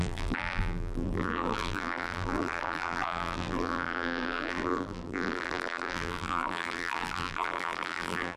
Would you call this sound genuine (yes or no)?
no